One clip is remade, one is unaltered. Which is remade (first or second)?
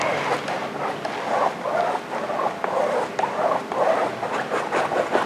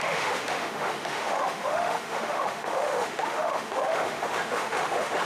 second